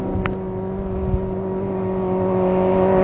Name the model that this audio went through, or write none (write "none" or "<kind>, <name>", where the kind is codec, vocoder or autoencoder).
none